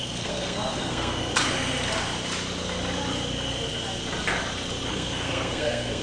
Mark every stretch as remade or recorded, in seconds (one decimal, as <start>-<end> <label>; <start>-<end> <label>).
0.0-1.3 remade; 1.3-4.9 recorded; 4.9-6.0 remade